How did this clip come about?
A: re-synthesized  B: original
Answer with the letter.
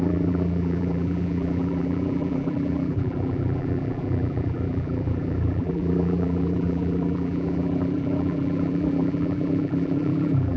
A